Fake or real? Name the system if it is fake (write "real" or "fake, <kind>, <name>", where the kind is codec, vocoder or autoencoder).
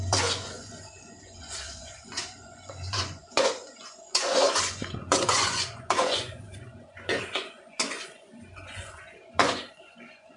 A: fake, vocoder, Vocos